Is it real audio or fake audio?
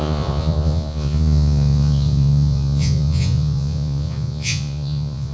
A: fake